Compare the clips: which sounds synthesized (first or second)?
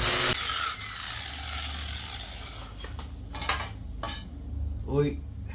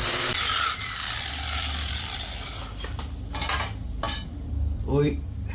second